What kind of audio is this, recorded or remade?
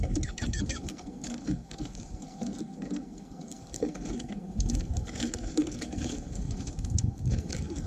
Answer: remade